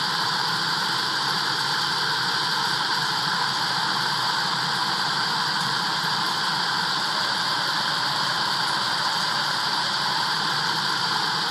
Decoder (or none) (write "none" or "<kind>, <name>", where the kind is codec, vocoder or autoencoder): vocoder, BigVGAN v2